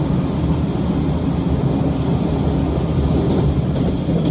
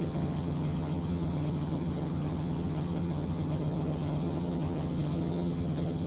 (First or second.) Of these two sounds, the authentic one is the first